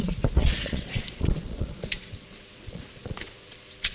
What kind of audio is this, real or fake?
fake